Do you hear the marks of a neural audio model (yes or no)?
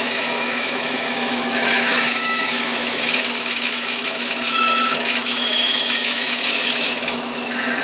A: yes